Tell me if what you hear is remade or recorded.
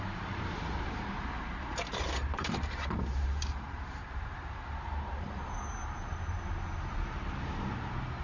remade